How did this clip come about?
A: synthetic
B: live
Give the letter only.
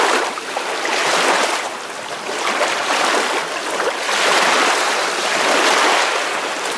B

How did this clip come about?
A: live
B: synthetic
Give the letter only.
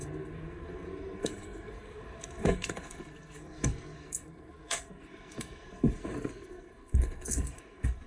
B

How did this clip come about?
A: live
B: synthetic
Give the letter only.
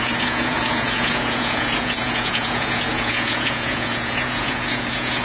B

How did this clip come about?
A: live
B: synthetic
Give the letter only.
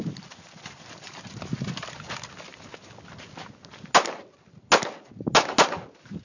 A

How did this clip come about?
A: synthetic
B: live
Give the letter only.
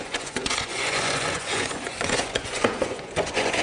A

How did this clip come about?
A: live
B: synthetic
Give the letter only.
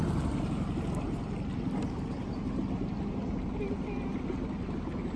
A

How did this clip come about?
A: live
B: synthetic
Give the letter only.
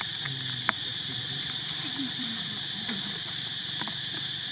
B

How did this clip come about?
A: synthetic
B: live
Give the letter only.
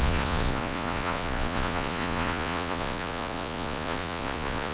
A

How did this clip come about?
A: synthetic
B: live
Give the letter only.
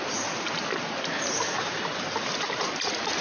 B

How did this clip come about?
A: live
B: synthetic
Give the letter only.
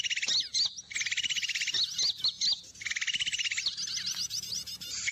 A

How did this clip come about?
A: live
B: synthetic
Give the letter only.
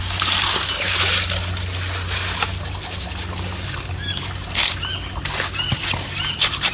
A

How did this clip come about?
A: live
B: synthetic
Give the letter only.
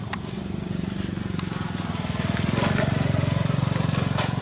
A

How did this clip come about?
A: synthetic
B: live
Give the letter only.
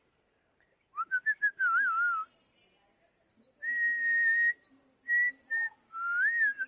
B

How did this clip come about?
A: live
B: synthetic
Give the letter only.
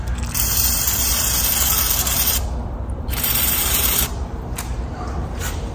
B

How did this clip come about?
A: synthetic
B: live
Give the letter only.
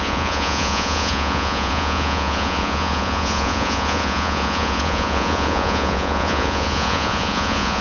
A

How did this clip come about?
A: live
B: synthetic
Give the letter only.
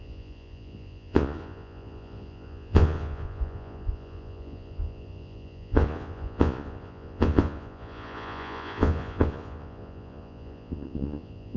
B